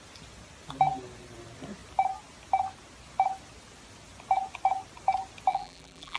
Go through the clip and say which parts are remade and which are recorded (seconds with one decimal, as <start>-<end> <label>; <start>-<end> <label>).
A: 0.0-5.5 recorded; 5.5-6.2 remade

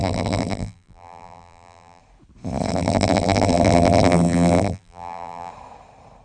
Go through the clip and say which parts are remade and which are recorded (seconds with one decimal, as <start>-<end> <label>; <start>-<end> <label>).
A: 0.0-2.0 remade; 2.0-2.7 recorded; 2.7-5.5 remade; 5.5-6.2 recorded

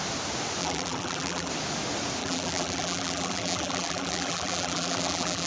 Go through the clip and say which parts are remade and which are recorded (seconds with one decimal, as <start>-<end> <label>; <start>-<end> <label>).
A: 0.0-0.6 recorded; 0.6-1.5 remade; 1.5-2.2 recorded; 2.2-5.5 remade

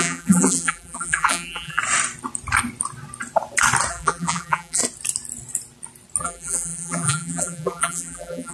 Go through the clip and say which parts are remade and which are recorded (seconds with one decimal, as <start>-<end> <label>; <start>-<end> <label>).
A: 0.0-1.8 remade; 1.8-3.9 recorded; 3.9-4.8 remade; 4.8-6.2 recorded; 6.2-8.5 remade

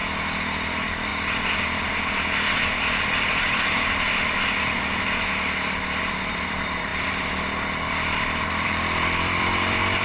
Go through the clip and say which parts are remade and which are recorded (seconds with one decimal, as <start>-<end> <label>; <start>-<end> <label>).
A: 0.0-0.7 recorded; 0.7-1.1 remade; 1.1-6.0 recorded; 6.0-10.0 remade

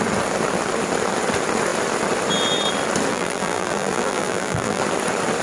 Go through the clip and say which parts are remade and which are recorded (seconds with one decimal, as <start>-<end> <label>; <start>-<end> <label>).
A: 0.0-3.1 recorded; 3.1-4.8 remade; 4.8-5.4 recorded